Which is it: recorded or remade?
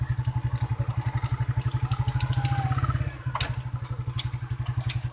recorded